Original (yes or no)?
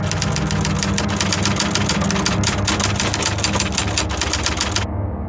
yes